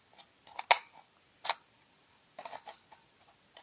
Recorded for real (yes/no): yes